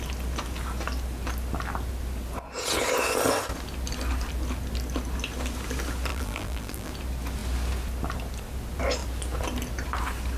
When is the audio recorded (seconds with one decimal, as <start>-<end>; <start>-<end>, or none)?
0.0-6.1; 6.9-10.4

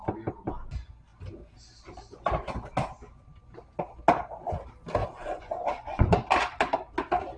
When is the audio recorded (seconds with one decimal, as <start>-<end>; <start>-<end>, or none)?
0.0-5.0; 6.1-7.4

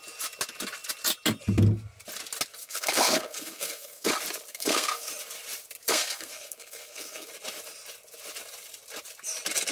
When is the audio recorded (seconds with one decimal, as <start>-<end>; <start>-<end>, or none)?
0.0-2.6; 4.1-4.5; 5.1-5.9; 7.3-9.7

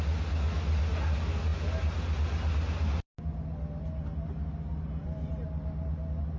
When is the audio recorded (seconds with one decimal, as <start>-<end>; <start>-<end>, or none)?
0.0-6.4

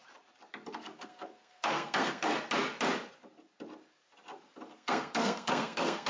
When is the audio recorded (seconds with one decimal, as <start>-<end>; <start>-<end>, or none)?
0.0-0.7; 2.3-4.7

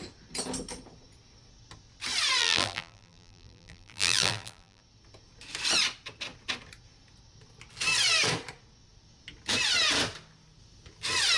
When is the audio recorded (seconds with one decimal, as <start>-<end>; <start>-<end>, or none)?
0.0-2.4; 4.8-11.4

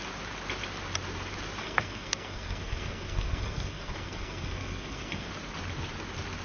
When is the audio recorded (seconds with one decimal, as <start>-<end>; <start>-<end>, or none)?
0.0-1.6; 5.3-6.4